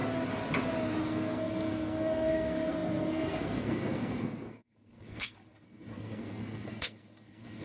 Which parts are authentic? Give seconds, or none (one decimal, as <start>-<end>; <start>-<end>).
0.0-1.0